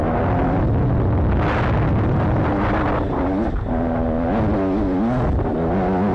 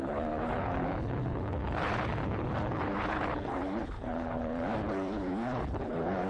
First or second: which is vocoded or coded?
second